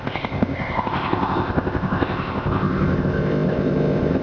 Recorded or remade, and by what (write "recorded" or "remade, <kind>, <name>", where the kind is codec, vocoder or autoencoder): remade, codec, ZipCodec